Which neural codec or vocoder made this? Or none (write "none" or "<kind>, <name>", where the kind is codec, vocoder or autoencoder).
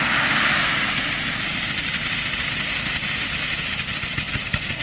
none